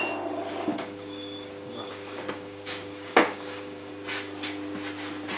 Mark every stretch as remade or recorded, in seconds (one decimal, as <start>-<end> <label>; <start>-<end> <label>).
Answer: 0.0-0.7 recorded; 0.7-3.9 remade; 3.9-5.4 recorded